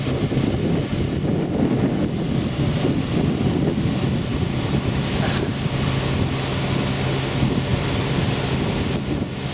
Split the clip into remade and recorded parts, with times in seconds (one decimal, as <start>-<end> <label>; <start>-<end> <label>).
0.0-9.5 recorded